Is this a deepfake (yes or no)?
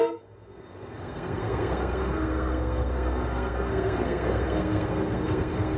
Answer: yes